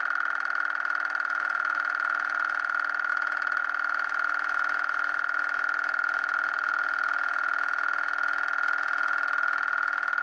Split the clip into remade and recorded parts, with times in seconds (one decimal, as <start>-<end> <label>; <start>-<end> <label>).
0.0-10.2 recorded